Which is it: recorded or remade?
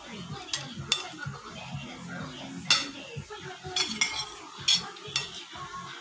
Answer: recorded